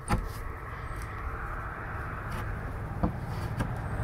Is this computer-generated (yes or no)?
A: no